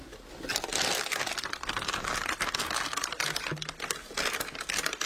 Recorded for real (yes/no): yes